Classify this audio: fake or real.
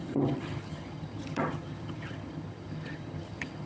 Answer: fake